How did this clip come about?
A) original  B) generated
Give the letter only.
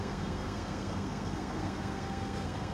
B